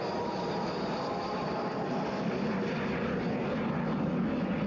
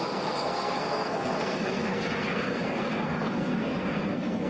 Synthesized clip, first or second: second